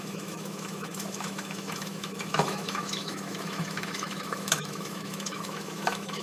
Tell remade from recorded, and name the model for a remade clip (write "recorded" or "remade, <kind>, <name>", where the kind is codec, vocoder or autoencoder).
remade, autoencoder, DAC-VAE